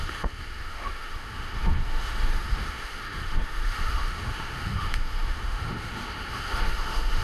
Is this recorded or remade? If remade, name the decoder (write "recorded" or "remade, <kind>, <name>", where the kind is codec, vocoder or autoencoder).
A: remade, autoencoder, DAC-VAE